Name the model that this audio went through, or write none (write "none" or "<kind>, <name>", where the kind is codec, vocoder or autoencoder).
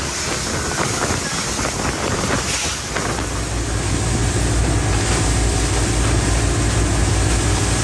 none